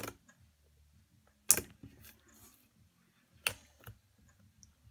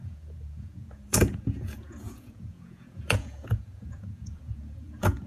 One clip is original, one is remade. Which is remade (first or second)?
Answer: second